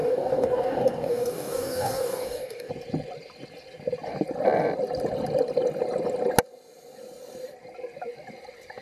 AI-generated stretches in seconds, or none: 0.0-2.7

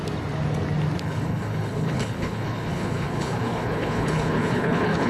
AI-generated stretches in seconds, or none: 1.0-5.1

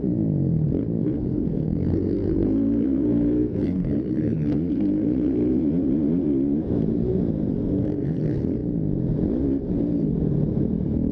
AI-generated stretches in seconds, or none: 1.0-5.6; 7.5-8.2

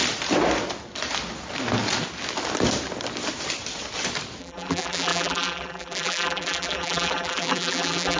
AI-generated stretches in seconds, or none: 4.4-8.2

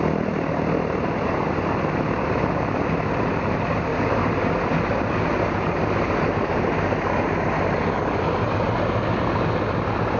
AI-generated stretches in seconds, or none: none

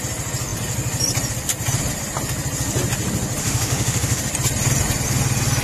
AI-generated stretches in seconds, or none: 3.4-4.2